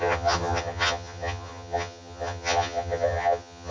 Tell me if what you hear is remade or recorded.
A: remade